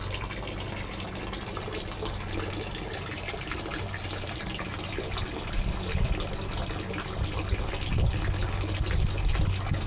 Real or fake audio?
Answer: real